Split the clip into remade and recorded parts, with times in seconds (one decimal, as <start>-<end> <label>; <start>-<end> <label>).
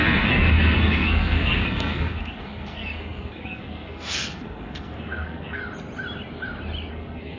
0.0-5.6 remade; 5.6-6.9 recorded; 6.9-7.4 remade